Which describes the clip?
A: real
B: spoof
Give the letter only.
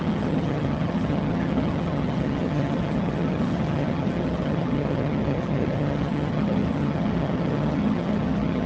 B